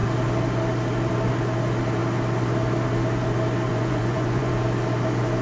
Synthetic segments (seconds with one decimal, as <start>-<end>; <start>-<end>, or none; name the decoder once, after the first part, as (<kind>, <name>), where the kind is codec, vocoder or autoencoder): 3.7-4.5 (vocoder, Vocos)